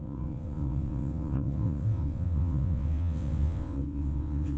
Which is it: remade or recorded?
remade